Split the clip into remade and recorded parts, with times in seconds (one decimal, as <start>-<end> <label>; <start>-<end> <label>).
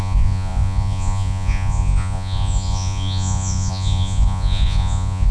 0.0-5.3 remade